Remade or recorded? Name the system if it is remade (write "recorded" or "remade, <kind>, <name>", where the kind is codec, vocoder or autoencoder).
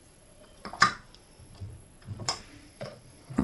remade, vocoder, Vocos